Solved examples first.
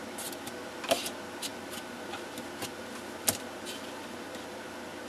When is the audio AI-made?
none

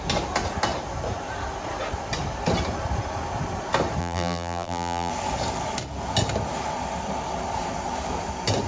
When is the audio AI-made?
4.0-5.1 (vocoder, BigVGAN v2)

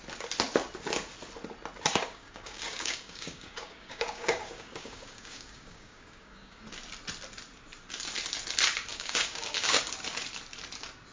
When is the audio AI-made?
1.9-6.6 (codec, DAC); 8.9-9.8

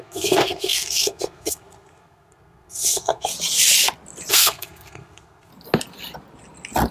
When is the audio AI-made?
0.0-3.3 (codec, SNAC); 4.3-5.5